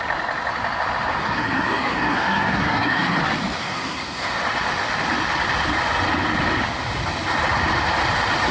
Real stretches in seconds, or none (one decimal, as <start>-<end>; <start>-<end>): 0.0-1.2; 3.2-3.6; 4.4-8.5